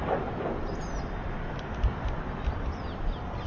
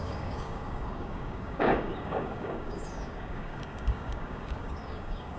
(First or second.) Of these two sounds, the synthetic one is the second